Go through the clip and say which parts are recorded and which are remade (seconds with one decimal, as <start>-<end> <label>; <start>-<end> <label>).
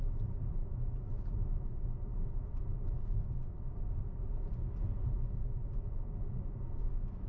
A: 0.0-7.3 recorded